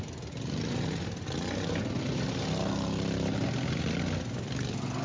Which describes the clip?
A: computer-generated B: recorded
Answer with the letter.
B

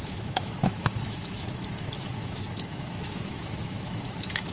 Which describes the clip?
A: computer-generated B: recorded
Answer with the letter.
A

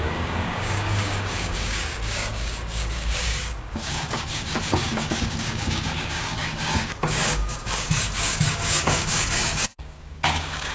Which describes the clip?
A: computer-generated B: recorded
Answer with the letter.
A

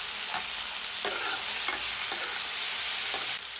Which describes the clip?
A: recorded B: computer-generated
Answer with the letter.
A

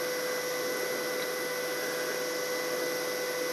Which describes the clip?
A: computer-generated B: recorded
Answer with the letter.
B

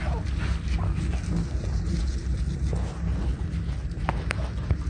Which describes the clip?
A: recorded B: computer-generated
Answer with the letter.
A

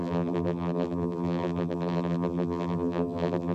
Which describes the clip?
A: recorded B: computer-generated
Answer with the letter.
B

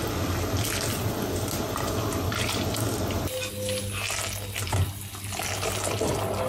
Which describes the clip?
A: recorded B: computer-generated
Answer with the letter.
A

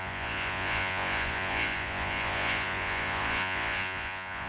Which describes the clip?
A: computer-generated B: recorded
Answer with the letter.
A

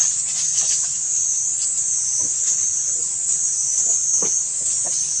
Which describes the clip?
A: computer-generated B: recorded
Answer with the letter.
B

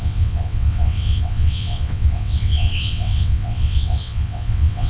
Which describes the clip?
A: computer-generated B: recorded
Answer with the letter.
A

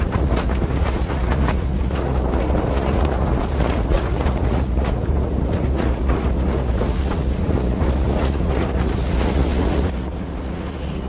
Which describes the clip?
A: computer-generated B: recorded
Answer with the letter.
A